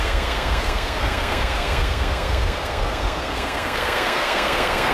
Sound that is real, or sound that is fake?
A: fake